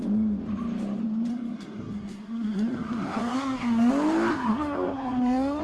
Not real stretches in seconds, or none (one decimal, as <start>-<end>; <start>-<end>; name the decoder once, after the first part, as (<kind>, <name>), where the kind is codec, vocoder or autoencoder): 1.3-3.9 (codec, SNAC); 4.3-5.6